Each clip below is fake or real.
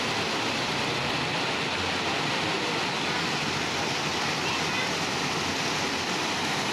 real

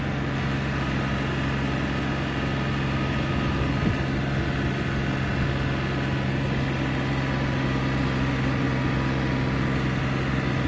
real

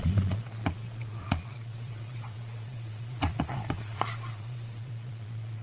fake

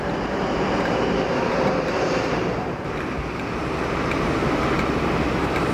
real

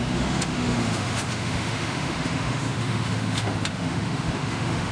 fake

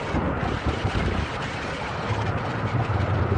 real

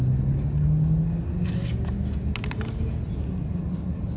real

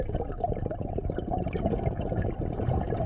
real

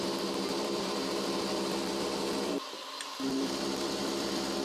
real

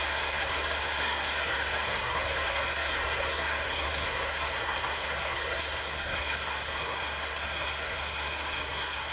fake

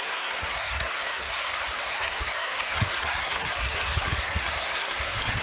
fake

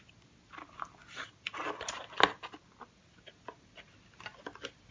real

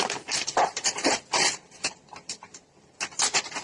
real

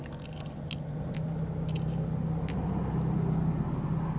real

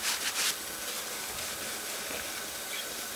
real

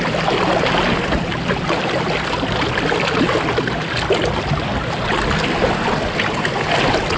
real